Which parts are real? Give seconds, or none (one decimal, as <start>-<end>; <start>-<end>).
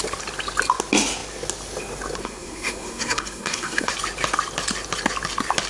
0.0-2.2; 3.9-5.7